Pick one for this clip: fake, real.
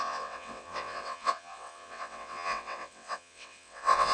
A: fake